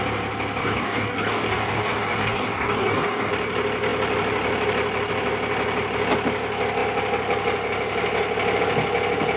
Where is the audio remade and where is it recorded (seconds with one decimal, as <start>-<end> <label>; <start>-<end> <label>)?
0.0-0.6 recorded; 0.6-3.3 remade; 3.3-9.4 recorded